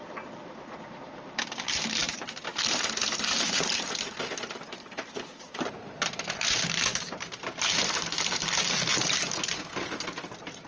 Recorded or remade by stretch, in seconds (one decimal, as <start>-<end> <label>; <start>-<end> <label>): 0.0-10.7 remade